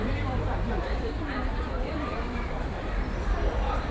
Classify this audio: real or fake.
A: fake